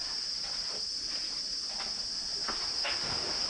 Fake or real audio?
real